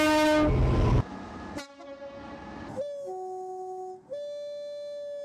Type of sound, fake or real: real